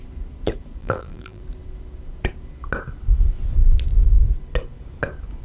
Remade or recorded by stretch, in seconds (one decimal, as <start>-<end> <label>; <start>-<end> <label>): 0.0-0.8 recorded; 0.8-1.4 remade; 1.4-5.4 recorded